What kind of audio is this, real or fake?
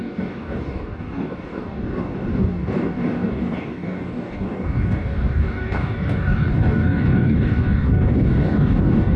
fake